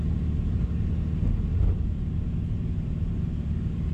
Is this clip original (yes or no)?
yes